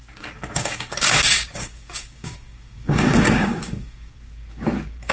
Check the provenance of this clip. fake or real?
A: fake